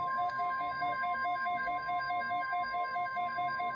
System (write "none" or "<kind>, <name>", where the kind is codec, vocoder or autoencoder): codec, SNAC